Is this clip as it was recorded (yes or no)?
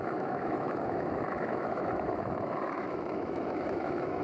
no